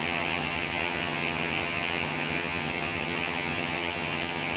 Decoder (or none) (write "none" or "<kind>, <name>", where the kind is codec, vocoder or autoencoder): vocoder, HiFi-GAN